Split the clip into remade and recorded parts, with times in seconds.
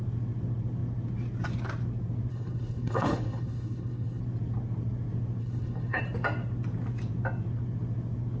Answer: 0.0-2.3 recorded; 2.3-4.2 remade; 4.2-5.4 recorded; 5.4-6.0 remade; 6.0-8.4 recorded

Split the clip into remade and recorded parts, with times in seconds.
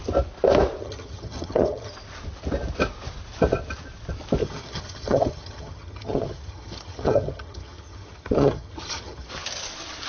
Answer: 0.0-0.8 recorded; 0.8-1.9 remade; 1.9-4.4 recorded; 4.4-9.3 remade; 9.3-10.1 recorded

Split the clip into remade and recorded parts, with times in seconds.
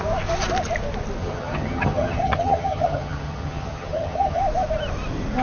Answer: 0.0-1.2 recorded; 1.2-4.4 remade; 4.4-5.4 recorded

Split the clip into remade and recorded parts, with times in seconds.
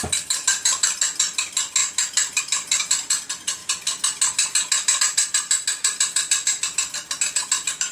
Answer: 0.0-7.9 recorded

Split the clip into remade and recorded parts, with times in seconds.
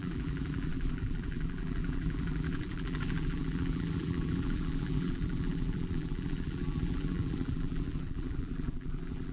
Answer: 0.0-9.3 remade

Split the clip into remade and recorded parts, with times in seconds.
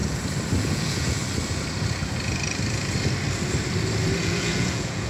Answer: 0.0-0.6 recorded; 0.6-1.2 remade; 1.2-4.2 recorded; 4.2-5.1 remade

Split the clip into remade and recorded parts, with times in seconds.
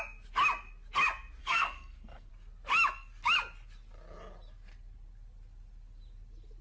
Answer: 0.0-1.4 recorded; 1.4-2.3 remade; 2.3-6.6 recorded